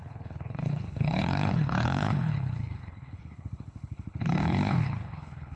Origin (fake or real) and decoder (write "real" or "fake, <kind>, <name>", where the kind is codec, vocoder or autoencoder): fake, codec, HILCodec